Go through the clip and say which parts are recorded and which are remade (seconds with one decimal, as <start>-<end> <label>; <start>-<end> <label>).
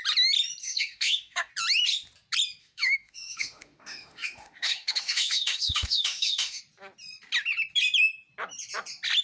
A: 0.0-0.6 recorded; 0.6-1.5 remade; 1.5-2.6 recorded; 2.6-6.6 remade; 6.6-9.2 recorded